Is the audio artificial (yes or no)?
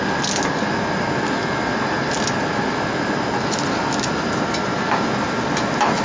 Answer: no